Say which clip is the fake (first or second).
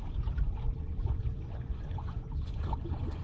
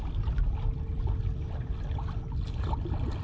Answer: first